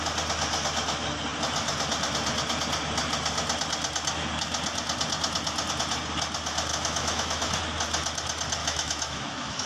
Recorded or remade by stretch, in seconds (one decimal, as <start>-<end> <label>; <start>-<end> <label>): 0.0-6.7 recorded; 6.7-7.6 remade; 7.6-8.6 recorded; 8.6-9.7 remade